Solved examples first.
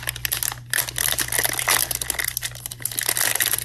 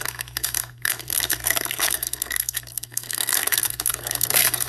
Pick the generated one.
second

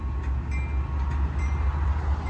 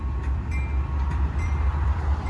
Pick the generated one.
second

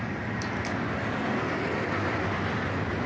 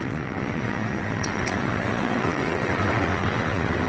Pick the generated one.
second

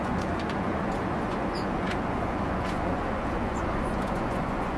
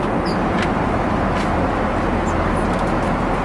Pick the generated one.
first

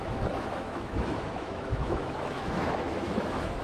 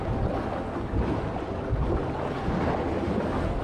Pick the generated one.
first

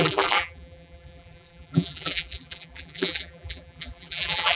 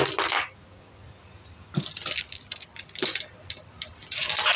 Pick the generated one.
first